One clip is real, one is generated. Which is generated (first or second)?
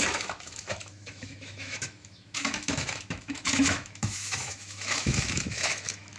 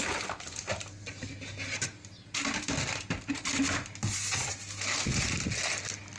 first